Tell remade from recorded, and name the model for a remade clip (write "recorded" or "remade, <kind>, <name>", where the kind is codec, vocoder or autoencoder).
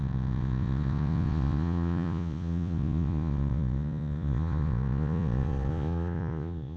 remade, vocoder, Vocos